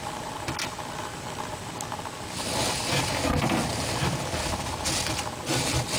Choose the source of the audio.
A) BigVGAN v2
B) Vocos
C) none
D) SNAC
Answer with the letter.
C